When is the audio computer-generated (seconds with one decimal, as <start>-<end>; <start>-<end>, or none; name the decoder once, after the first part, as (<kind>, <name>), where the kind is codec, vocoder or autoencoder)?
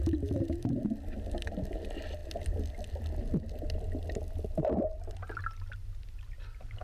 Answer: none